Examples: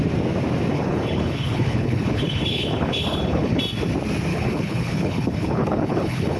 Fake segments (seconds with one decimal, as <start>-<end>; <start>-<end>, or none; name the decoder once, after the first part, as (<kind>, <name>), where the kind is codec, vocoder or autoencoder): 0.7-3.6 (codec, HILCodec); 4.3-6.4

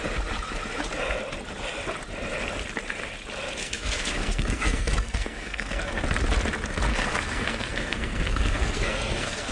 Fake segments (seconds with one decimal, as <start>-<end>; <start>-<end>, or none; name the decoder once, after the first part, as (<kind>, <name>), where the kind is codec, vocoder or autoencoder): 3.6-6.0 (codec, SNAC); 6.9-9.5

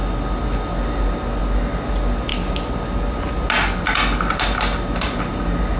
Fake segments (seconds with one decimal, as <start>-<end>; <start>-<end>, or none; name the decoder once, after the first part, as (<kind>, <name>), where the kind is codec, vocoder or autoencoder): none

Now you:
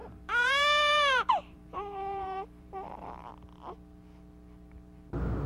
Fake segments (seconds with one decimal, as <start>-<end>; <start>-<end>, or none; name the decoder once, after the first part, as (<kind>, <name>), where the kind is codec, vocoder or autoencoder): 0.0-3.3 (vocoder, BigVGAN v2)

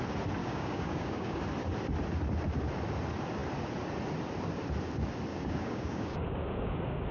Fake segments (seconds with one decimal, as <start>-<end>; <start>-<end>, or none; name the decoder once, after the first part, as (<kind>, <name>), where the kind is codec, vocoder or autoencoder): 0.4-1.4 (codec, DAC); 5.3-7.1

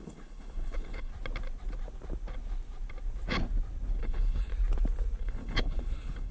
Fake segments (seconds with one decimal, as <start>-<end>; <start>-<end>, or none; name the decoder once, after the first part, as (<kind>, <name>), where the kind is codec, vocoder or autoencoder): 0.0-1.1 (codec, HILCodec); 4.0-4.5; 5.2-6.3

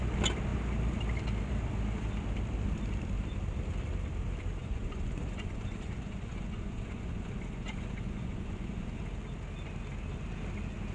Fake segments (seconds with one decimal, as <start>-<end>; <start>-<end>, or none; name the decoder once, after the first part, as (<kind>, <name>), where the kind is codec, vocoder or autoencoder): 4.6-9.0 (vocoder, Vocos)

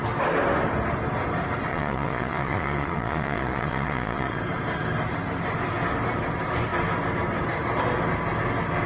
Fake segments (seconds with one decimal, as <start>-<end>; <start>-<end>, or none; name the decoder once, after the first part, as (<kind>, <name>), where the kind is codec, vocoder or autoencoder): 1.7-4.4 (vocoder, Vocos)